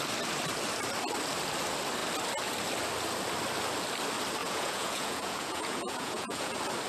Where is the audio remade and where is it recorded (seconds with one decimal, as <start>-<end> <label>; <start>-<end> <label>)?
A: 0.0-4.4 recorded; 4.4-6.5 remade; 6.5-6.9 recorded